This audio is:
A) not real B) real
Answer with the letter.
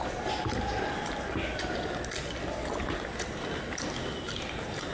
B